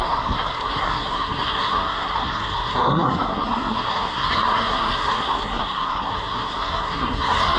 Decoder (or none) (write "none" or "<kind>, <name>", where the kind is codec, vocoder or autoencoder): codec, SNAC